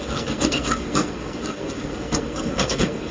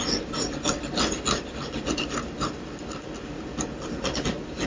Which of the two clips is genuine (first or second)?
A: second